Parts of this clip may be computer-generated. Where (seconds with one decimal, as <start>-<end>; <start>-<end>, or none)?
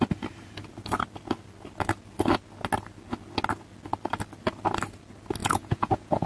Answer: 5.4-6.3